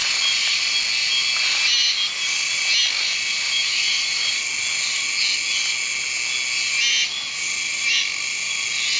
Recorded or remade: recorded